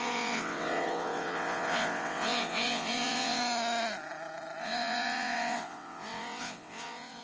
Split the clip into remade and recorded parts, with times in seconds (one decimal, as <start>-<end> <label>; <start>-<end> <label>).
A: 0.0-3.4 remade; 3.4-4.6 recorded; 4.6-7.2 remade